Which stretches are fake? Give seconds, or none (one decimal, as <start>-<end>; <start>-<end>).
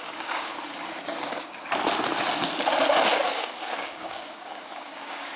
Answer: 0.0-0.5; 3.3-5.4